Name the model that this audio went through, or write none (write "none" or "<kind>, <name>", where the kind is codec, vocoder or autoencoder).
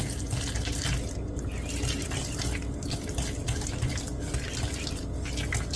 none